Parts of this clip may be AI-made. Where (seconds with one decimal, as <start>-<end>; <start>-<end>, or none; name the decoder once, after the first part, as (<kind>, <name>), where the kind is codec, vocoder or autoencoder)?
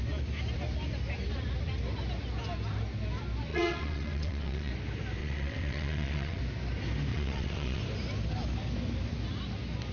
3.5-4.7 (vocoder, WaveNeXt); 5.2-6.4; 7.1-7.8